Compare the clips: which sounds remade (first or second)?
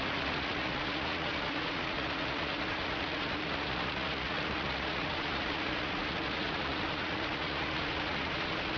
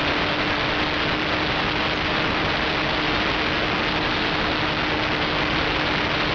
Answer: first